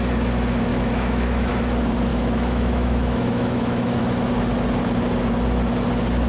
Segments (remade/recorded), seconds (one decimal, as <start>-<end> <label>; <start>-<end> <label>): 0.0-0.7 recorded; 0.7-1.5 remade; 1.5-2.1 recorded; 2.1-4.3 remade; 4.3-6.3 recorded